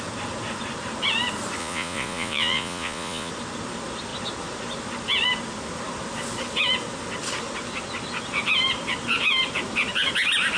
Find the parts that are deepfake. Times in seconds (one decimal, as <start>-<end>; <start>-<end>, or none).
1.6-3.3